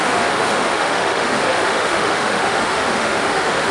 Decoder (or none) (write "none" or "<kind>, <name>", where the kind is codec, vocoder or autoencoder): autoencoder, DAC-VAE